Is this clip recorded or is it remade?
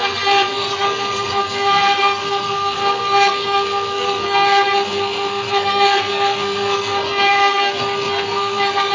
remade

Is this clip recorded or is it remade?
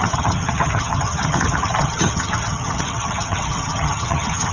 remade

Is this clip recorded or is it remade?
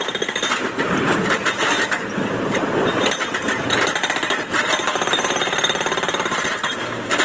remade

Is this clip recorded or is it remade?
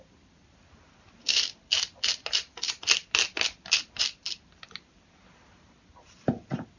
recorded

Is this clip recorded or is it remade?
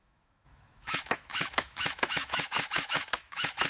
remade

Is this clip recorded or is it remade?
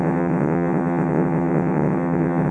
remade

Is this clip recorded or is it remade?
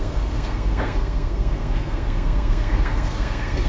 remade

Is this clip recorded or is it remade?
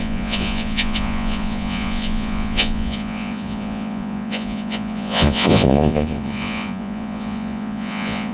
remade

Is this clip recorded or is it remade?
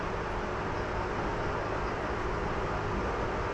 recorded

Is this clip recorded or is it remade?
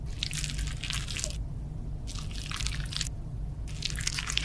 recorded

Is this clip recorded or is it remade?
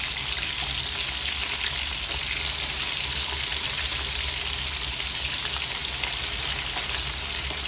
recorded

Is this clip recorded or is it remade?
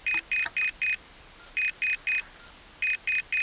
recorded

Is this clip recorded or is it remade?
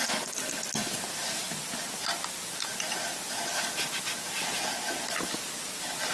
recorded